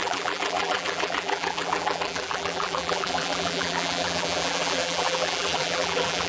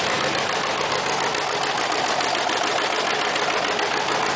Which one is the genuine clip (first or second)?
second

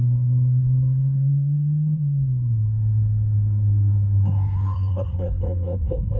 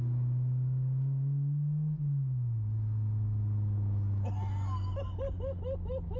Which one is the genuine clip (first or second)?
second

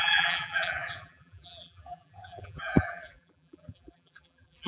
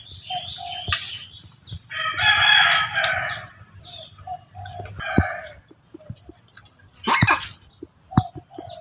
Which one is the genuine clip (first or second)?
second